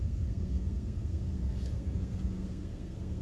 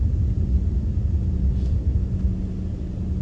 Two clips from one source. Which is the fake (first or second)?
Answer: first